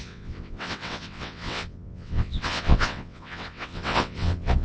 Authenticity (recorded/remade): remade